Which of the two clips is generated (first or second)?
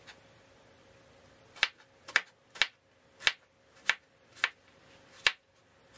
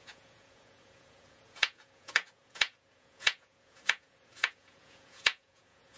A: second